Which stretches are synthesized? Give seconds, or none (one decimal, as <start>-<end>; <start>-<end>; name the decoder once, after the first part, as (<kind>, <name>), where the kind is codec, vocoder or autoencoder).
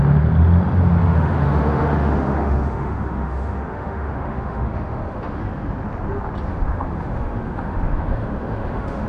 1.0-5.4 (autoencoder, DAC-VAE); 6.5-9.1